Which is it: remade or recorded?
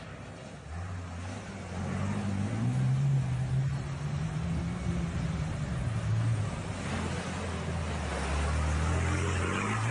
recorded